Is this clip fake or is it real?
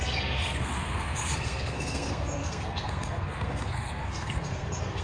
fake